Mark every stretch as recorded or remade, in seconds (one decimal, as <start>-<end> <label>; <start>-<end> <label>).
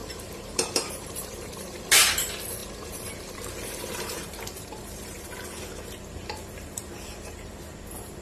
0.0-1.8 remade; 1.8-2.6 recorded; 2.6-7.5 remade; 7.5-8.2 recorded